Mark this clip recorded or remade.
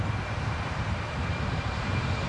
recorded